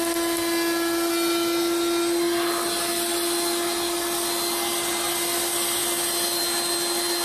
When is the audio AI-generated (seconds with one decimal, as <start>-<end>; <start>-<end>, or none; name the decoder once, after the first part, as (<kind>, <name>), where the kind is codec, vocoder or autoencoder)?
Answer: none